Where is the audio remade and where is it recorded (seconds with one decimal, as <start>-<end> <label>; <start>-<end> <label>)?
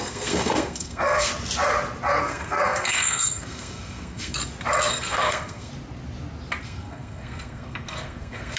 0.0-1.3 remade; 1.3-2.2 recorded; 2.2-4.4 remade; 4.4-4.9 recorded; 4.9-5.7 remade; 5.7-6.6 recorded; 6.6-8.6 remade